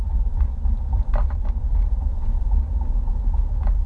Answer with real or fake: fake